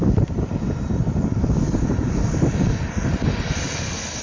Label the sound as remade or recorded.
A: recorded